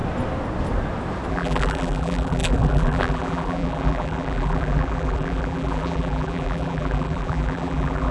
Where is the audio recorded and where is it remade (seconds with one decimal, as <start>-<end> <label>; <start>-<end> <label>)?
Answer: 0.0-1.3 recorded; 1.3-8.1 remade